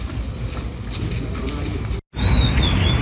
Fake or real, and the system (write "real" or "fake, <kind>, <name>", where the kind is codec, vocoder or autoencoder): real